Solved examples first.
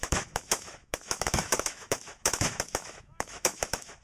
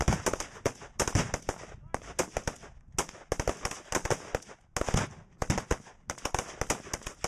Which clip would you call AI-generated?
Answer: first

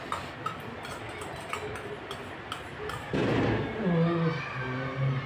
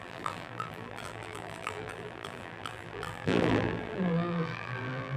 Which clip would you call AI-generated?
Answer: second